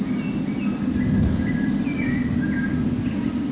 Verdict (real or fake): real